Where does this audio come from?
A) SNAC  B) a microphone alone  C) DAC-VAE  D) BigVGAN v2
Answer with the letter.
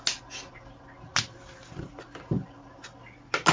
B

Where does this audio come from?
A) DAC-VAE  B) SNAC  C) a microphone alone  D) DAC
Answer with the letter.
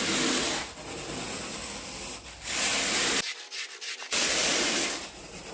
C